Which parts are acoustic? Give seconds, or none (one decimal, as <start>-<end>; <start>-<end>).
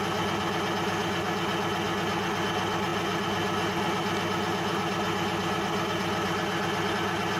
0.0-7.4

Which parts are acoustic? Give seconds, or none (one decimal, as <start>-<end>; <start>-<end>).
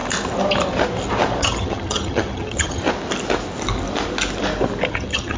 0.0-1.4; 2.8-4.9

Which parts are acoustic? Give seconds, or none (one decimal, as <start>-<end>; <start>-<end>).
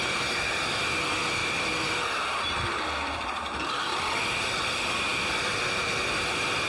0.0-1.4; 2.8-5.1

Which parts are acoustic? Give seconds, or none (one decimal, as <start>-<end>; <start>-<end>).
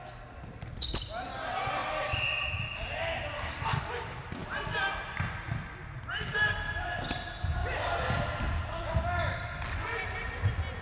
0.0-7.6; 9.0-10.8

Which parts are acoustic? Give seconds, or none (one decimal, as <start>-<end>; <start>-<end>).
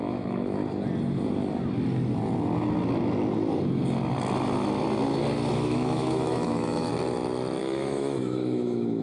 0.6-5.5; 6.9-7.6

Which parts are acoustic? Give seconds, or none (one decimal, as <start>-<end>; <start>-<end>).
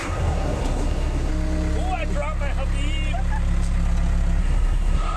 1.3-4.4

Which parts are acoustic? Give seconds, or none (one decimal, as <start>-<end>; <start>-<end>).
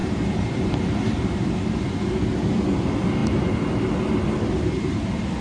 1.8-5.4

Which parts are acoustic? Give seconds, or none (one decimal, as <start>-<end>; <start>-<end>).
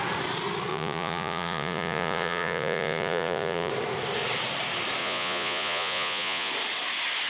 0.0-0.7; 3.7-5.0; 6.5-7.3